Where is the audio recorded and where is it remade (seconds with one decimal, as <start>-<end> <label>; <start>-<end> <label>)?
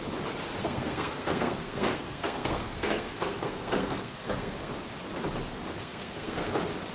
0.0-0.6 recorded; 0.6-4.7 remade; 4.7-5.8 recorded; 5.8-6.5 remade; 6.5-6.9 recorded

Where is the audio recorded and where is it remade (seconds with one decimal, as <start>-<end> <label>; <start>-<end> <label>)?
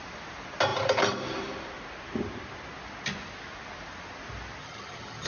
0.0-4.6 recorded; 4.6-5.3 remade